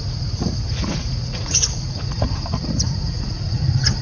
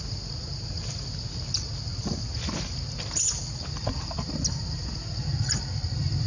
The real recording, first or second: second